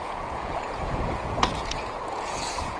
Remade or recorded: remade